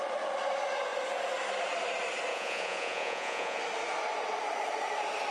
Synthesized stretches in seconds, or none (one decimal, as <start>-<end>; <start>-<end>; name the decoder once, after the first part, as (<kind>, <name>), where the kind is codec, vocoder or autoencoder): 2.3-3.6 (vocoder, Vocos)